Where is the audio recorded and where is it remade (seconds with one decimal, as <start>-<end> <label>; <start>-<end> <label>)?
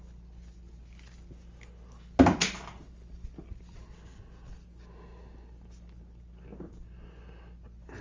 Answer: 0.0-8.0 recorded